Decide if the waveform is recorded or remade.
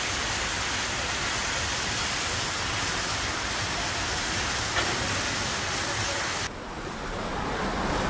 recorded